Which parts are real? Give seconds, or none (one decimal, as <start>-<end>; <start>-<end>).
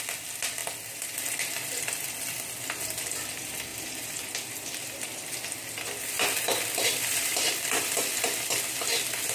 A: 0.0-3.7; 8.2-9.3